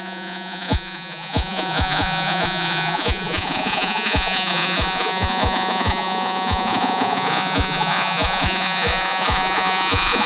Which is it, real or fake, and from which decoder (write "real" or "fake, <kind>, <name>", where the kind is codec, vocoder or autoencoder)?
fake, vocoder, Vocos